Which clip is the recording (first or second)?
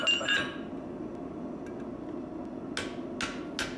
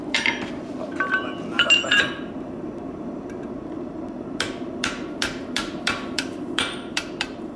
first